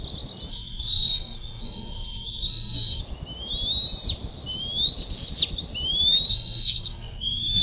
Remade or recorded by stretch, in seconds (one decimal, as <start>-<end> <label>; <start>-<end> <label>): 0.0-0.5 recorded; 0.5-3.0 remade; 3.0-6.3 recorded; 6.3-7.6 remade